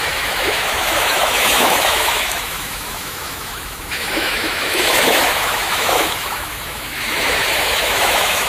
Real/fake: fake